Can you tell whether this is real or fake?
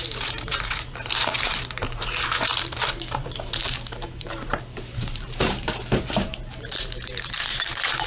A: fake